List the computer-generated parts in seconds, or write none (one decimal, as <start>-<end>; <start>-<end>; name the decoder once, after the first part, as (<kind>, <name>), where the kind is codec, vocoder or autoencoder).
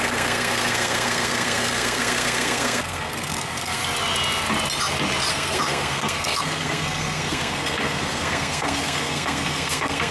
0.0-3.8 (codec, SNAC); 5.3-10.1